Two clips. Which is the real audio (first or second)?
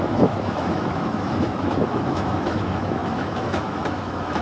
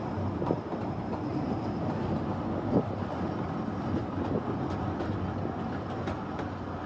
second